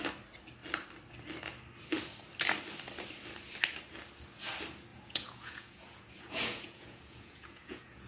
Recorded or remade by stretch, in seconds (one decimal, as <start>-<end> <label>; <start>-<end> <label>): 0.0-4.9 recorded; 4.9-8.1 remade